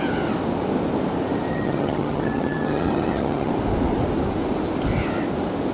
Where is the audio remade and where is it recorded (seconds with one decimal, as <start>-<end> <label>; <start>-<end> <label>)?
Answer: 0.0-1.5 recorded; 1.5-3.5 remade; 3.5-5.7 recorded